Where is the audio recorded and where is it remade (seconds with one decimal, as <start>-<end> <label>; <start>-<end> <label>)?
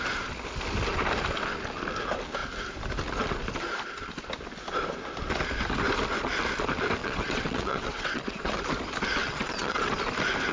0.0-7.0 recorded; 7.0-8.6 remade; 8.6-9.2 recorded; 9.2-9.9 remade; 9.9-10.5 recorded